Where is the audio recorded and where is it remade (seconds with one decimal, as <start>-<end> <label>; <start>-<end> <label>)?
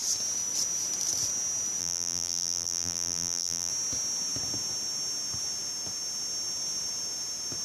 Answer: 0.0-1.8 recorded; 1.8-3.7 remade; 3.7-7.6 recorded